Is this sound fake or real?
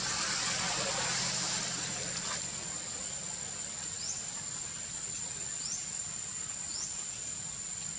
real